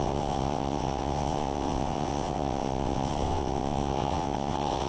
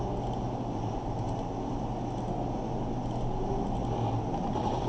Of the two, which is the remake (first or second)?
first